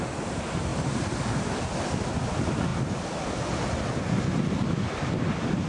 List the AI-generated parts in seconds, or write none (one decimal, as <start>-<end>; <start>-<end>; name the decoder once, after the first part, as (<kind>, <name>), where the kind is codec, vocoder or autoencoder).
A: none